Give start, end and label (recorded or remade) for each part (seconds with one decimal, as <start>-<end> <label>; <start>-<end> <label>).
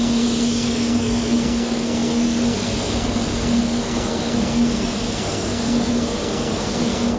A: 0.0-7.2 remade